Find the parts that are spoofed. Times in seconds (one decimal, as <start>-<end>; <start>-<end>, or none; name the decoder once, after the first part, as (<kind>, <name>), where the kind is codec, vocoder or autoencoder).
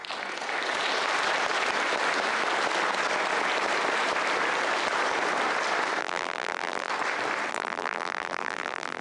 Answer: 6.0-6.9 (vocoder, BigVGAN v2); 7.5-9.0